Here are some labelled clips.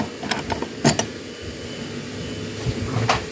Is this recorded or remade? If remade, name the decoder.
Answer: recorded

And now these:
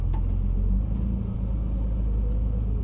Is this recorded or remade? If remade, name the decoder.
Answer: recorded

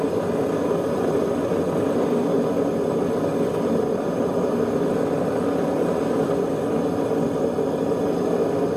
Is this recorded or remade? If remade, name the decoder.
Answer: recorded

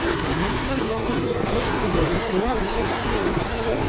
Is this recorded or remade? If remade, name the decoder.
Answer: remade, codec, SNAC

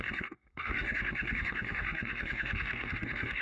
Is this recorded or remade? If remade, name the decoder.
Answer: remade, codec, DAC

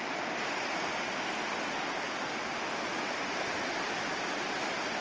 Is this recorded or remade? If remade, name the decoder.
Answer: recorded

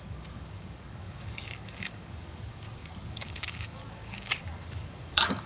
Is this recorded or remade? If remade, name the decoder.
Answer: remade, codec, DAC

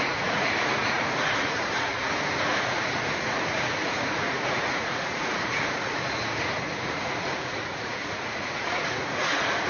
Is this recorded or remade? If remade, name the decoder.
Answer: remade, vocoder, Vocos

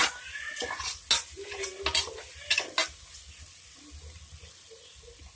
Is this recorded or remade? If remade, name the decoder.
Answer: recorded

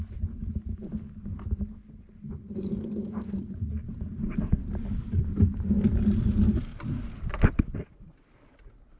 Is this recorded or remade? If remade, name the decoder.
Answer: recorded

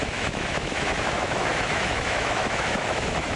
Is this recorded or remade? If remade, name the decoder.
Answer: remade, autoencoder, DAC-VAE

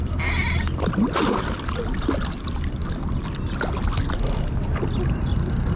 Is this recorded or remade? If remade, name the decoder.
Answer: recorded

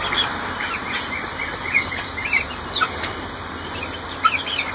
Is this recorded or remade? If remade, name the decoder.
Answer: remade, vocoder, BigVGAN v2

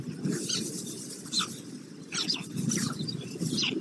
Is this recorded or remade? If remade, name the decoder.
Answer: recorded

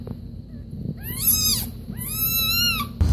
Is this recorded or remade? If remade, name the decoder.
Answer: recorded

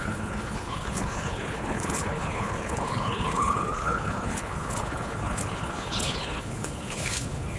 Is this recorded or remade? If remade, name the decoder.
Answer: remade, codec, HILCodec